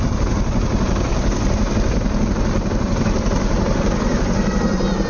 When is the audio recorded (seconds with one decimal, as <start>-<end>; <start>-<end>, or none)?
0.0-5.1